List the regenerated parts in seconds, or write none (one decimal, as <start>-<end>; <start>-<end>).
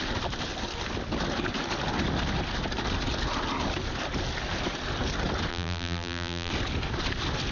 5.5-6.5